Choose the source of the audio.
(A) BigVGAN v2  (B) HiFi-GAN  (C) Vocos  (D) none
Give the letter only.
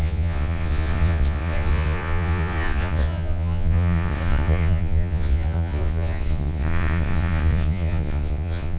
C